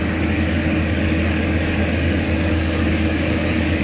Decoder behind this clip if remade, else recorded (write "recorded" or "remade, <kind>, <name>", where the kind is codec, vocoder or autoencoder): remade, codec, DAC